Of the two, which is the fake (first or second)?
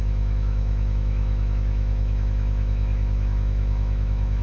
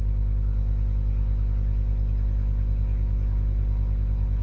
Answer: first